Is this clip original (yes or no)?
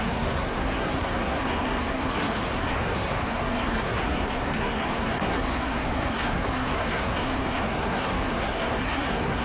no